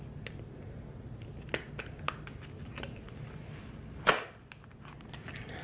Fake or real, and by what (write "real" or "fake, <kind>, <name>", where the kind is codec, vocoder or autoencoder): real